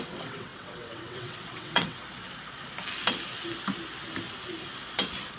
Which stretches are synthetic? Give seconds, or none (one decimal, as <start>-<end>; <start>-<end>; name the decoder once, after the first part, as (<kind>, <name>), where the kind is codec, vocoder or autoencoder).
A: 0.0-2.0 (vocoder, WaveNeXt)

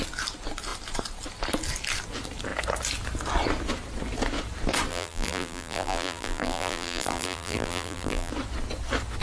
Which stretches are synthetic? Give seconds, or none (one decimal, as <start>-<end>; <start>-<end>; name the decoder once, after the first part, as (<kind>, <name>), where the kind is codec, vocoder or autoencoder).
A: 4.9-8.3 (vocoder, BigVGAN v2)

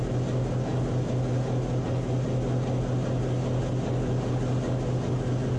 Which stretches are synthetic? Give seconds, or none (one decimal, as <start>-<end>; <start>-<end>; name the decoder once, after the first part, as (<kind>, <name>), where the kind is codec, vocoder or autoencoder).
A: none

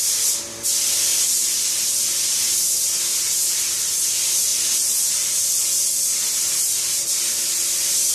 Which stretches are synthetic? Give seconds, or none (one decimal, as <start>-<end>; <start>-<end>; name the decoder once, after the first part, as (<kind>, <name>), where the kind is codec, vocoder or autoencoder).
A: none

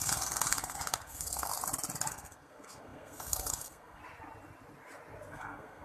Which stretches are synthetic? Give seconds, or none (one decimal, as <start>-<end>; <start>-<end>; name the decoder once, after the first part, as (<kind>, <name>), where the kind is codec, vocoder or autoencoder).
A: 0.0-1.5 (codec, SNAC); 2.1-4.0; 5.3-5.8